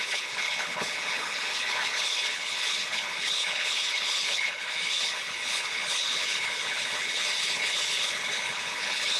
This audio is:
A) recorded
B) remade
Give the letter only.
B